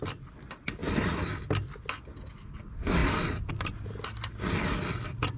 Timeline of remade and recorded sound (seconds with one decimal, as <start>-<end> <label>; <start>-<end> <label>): 0.0-0.8 remade; 0.8-2.5 recorded; 2.5-5.4 remade